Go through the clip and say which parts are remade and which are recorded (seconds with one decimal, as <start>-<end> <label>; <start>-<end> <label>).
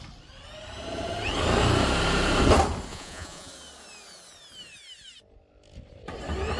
0.0-2.9 recorded; 2.9-3.5 remade; 3.5-6.6 recorded